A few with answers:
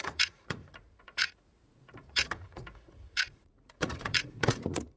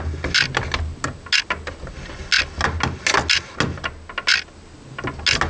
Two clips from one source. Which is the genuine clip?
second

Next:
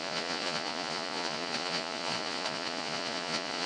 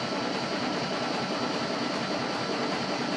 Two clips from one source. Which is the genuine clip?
second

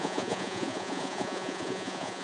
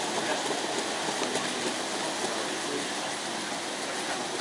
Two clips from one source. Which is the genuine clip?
second